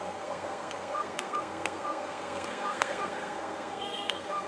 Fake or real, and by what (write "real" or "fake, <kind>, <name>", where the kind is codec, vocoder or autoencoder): fake, codec, SNAC